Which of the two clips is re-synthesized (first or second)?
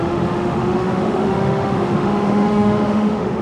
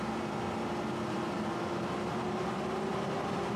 first